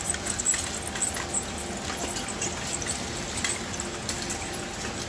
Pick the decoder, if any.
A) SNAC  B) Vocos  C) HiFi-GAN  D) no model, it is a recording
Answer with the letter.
D